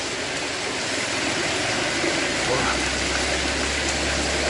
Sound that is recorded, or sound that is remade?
recorded